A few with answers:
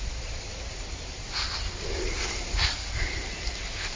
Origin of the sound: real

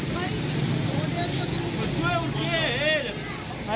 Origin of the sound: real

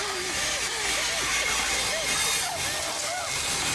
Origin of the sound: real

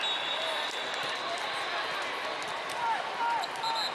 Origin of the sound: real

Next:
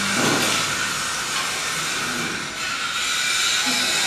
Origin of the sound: real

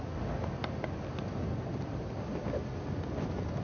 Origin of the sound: real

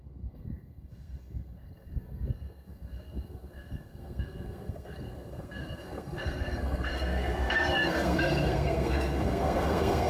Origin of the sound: fake